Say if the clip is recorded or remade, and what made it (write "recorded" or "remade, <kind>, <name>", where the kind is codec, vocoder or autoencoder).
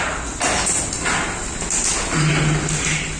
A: recorded